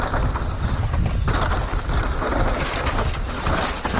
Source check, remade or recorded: remade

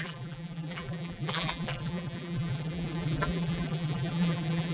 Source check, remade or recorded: remade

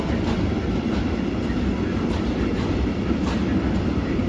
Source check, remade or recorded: recorded